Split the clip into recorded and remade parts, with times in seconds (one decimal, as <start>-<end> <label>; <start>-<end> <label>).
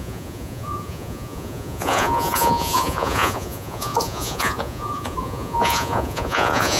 0.0-6.8 remade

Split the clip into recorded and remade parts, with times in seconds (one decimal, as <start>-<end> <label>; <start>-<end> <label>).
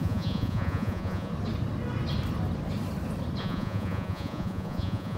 0.0-1.3 remade; 1.3-3.4 recorded; 3.4-5.2 remade